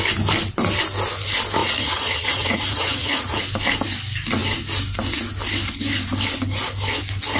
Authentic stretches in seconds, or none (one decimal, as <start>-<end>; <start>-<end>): 0.0-1.6; 3.4-7.4